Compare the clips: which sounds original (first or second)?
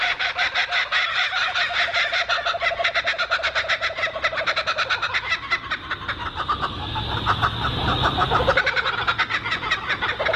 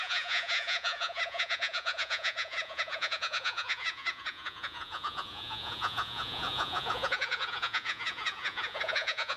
first